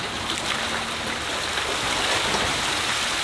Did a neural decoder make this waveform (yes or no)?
no